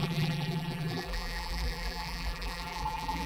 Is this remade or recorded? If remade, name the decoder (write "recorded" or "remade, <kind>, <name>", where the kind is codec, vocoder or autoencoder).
remade, vocoder, BigVGAN v2